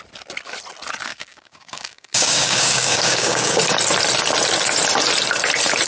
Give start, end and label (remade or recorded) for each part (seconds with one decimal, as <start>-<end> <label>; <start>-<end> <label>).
0.0-1.1 recorded; 1.1-3.6 remade; 3.6-5.9 recorded